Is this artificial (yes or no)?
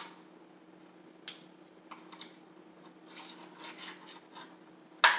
no